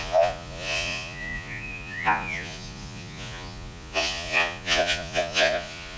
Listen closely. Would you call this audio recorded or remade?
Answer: remade